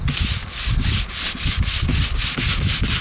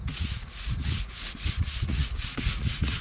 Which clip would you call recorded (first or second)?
first